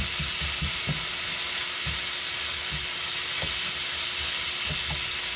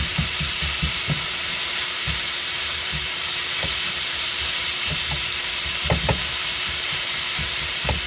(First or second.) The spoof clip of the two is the second